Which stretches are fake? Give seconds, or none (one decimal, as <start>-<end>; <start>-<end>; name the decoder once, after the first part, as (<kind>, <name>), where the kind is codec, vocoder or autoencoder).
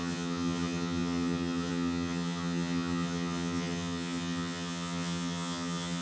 0.0-6.0 (vocoder, HiFi-GAN)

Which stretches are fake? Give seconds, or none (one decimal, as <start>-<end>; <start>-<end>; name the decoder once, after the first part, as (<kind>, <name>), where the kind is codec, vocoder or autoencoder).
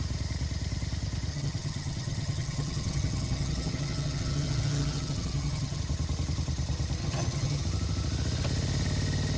1.3-5.8 (vocoder, HiFi-GAN); 7.0-7.6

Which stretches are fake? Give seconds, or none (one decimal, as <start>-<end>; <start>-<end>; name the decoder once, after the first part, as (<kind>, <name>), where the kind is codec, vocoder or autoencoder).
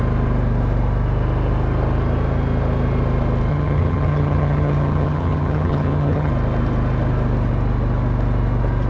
3.5-6.3 (vocoder, HiFi-GAN)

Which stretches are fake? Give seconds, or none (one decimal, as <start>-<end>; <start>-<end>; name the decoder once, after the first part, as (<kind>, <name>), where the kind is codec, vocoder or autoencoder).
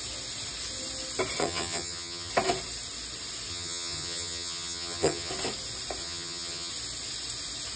1.4-2.3 (vocoder, HiFi-GAN); 3.5-5.3; 6.0-6.7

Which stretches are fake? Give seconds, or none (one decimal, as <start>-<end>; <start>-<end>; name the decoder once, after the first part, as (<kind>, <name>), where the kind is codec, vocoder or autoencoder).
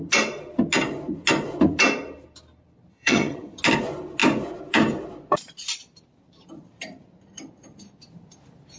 2.9-3.6 (vocoder, HiFi-GAN)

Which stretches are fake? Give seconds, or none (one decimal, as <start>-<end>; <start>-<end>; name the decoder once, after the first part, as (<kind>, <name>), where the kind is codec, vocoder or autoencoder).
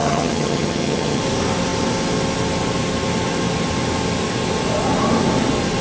0.0-1.2 (vocoder, HiFi-GAN)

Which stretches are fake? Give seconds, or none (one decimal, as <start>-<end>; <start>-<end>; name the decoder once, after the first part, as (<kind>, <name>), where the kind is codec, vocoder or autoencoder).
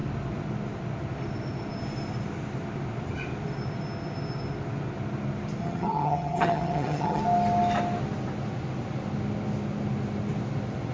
5.6-7.2 (vocoder, HiFi-GAN)